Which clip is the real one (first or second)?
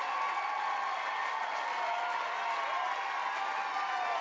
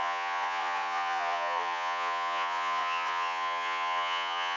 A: first